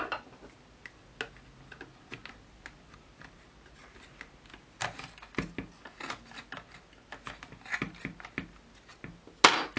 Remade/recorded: recorded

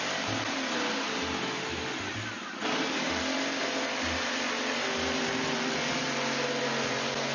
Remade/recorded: recorded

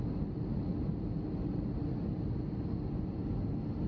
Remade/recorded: recorded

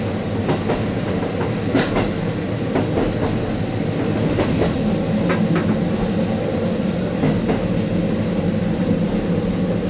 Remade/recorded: recorded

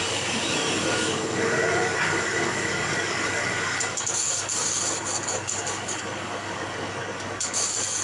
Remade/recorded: remade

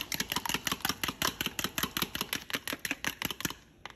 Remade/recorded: recorded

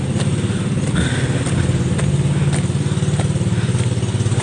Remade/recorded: recorded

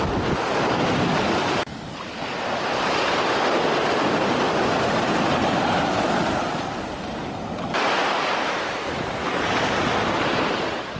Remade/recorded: recorded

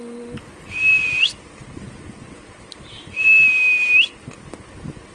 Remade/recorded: recorded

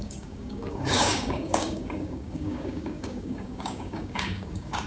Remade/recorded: remade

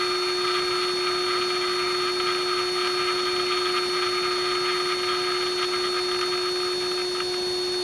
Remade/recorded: recorded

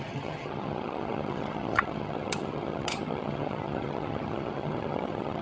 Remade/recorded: remade